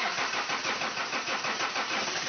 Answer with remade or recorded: recorded